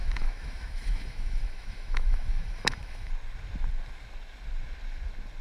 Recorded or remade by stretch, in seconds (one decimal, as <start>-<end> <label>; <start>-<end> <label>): 0.0-3.1 remade; 3.1-5.4 recorded